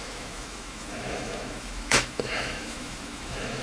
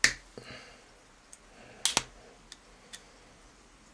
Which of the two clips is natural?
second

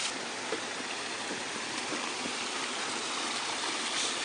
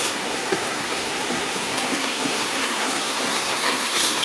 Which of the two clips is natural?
first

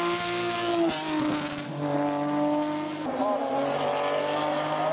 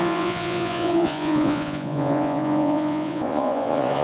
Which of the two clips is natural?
first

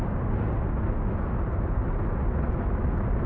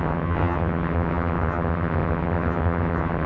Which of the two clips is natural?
first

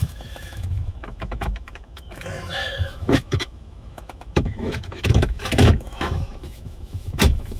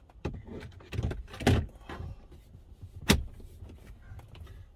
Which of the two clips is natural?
second